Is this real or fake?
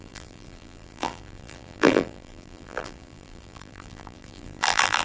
fake